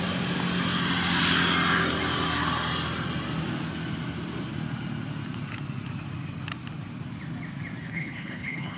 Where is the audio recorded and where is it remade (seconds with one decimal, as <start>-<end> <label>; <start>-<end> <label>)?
0.0-7.8 recorded; 7.8-8.8 remade